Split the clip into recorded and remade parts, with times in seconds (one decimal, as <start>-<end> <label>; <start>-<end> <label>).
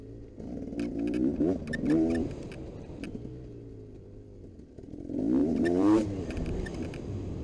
0.0-5.4 recorded; 5.4-6.8 remade; 6.8-7.4 recorded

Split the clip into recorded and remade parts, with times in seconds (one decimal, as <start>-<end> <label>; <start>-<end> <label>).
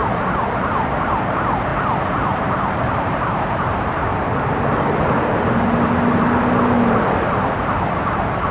0.0-1.7 remade; 1.7-2.9 recorded; 2.9-4.1 remade; 4.1-8.5 recorded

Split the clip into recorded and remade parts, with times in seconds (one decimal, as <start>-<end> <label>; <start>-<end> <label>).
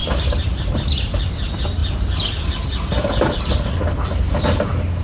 0.0-1.3 remade; 1.3-1.8 recorded; 1.8-3.4 remade; 3.4-5.0 recorded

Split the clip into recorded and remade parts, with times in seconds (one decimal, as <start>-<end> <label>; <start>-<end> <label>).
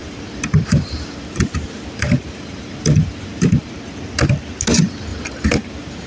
0.0-3.7 remade; 3.7-5.1 recorded; 5.1-6.1 remade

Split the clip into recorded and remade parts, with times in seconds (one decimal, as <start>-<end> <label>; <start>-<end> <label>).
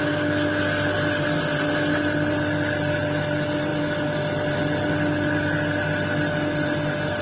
0.0-7.2 recorded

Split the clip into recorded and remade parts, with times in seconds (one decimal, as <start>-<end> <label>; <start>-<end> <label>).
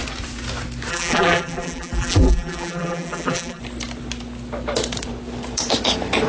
0.0-0.9 recorded; 0.9-3.6 remade; 3.6-6.3 recorded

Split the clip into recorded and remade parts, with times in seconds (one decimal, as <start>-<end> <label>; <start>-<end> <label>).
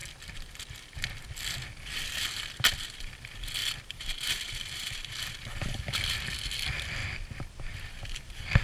0.0-0.5 remade; 0.5-3.6 recorded; 3.6-6.2 remade; 6.2-7.0 recorded; 7.0-7.8 remade; 7.8-8.6 recorded